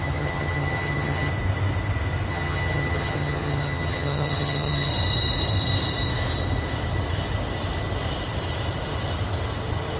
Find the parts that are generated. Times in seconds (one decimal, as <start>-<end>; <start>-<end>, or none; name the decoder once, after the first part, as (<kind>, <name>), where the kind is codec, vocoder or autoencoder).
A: 0.0-1.3 (vocoder, HiFi-GAN); 2.3-4.9